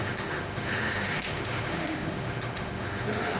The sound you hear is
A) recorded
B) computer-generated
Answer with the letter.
B